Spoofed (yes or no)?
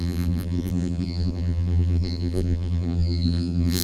yes